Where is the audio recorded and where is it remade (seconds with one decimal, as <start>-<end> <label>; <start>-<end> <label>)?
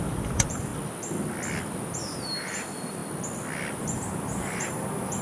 0.0-0.7 remade; 0.7-1.8 recorded; 1.8-3.0 remade; 3.0-3.8 recorded; 3.8-5.2 remade